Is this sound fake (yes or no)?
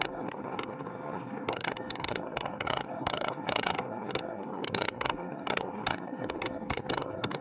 yes